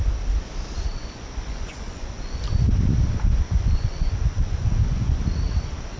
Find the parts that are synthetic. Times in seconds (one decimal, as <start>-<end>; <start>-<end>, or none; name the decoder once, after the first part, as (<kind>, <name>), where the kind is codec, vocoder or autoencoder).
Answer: 0.9-2.4 (vocoder, Vocos); 3.4-5.2